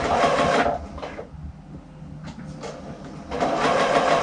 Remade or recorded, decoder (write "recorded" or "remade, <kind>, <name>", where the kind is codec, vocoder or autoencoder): recorded